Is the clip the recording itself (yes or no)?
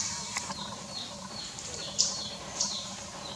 no